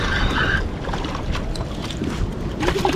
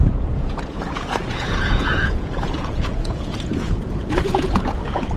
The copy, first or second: second